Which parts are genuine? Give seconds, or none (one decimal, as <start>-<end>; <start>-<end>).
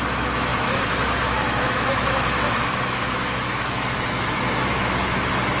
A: none